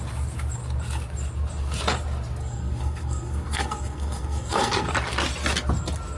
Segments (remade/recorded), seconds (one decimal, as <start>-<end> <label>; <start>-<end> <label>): 0.0-2.4 recorded; 2.4-4.9 remade; 4.9-6.2 recorded